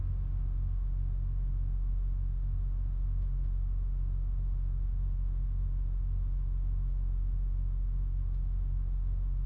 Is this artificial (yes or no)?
yes